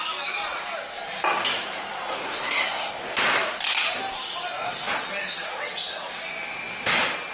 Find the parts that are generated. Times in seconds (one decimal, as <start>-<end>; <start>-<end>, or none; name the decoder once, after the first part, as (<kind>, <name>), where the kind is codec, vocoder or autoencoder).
2.1-3.0 (codec, SNAC)